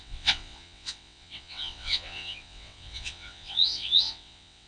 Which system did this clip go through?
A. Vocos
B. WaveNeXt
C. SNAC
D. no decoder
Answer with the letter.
B